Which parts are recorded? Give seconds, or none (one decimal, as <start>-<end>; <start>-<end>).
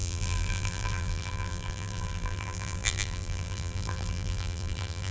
none